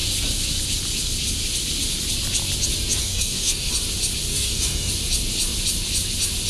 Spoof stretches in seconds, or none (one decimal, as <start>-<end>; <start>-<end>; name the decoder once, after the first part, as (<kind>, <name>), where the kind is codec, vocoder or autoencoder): 3.0-3.7 (codec, DAC); 4.3-4.9